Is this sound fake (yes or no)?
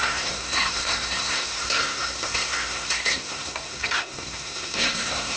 yes